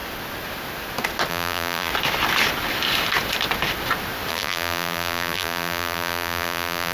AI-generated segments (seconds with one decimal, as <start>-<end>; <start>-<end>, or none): 1.3-1.9; 4.3-6.9